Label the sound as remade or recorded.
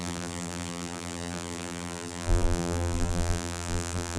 remade